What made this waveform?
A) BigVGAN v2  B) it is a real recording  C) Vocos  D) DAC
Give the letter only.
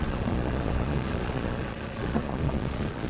C